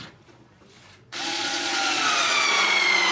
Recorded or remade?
remade